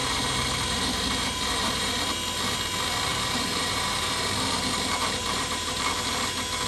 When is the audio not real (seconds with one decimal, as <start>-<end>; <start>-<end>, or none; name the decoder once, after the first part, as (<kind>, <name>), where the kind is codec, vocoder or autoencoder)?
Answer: 0.0-2.0 (vocoder, BigVGAN v2); 3.1-5.9